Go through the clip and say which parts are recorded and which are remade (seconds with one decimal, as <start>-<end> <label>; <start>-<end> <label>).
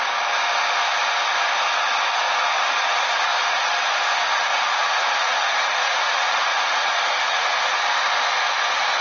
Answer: 0.0-4.5 recorded; 4.5-7.6 remade; 7.6-9.0 recorded